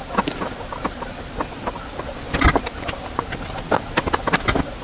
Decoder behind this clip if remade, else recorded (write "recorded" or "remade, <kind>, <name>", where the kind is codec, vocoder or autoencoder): recorded